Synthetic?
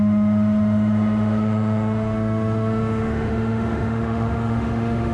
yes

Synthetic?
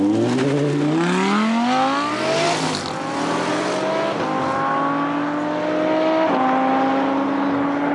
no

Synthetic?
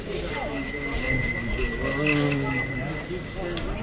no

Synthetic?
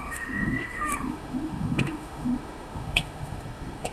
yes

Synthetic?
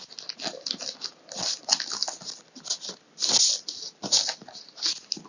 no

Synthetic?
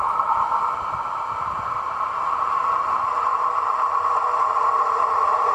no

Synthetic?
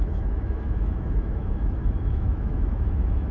yes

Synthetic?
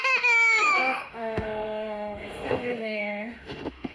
yes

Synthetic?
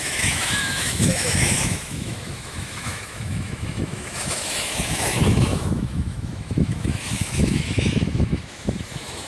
yes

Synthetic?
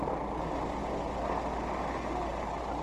no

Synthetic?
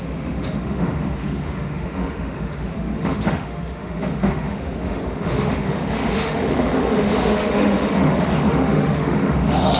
yes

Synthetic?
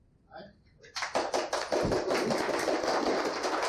no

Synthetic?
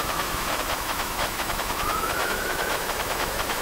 yes